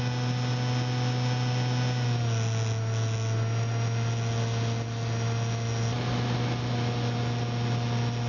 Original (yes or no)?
yes